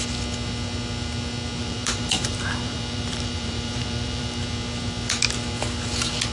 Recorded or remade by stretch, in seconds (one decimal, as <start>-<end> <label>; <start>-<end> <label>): 0.0-1.6 recorded; 1.6-4.4 remade; 4.4-6.3 recorded